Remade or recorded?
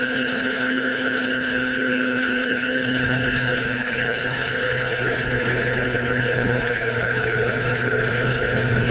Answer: remade